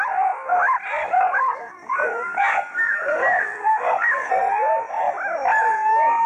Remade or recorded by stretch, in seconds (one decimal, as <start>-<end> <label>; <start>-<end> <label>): 0.0-1.0 recorded; 1.0-4.3 remade; 4.3-6.3 recorded